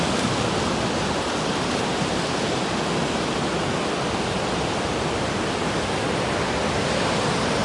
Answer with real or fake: real